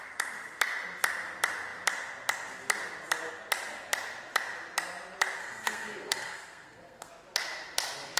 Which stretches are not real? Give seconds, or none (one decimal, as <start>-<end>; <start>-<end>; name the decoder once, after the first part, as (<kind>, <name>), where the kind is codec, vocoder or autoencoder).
5.4-7.1 (codec, SNAC)

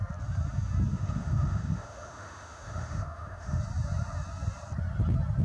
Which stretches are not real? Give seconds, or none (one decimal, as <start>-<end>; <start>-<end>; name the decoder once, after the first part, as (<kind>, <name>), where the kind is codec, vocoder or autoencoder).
0.9-3.6 (autoencoder, DAC-VAE)

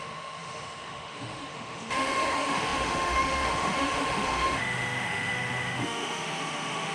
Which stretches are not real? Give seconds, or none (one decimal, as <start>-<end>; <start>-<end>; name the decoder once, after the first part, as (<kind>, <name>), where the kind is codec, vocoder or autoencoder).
0.0-6.9 (autoencoder, DAC-VAE)

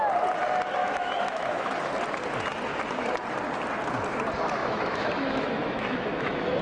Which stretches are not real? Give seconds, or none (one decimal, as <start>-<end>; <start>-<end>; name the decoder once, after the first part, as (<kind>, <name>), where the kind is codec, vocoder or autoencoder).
0.8-1.9 (autoencoder, DAC-VAE); 4.6-6.6

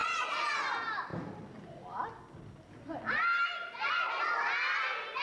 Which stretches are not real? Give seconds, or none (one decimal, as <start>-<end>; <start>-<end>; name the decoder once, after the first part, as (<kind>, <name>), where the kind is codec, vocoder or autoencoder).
0.0-0.6 (vocoder, Vocos)